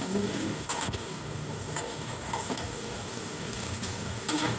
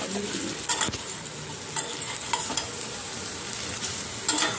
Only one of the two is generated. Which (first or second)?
first